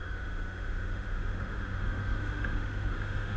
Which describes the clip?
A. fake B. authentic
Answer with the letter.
A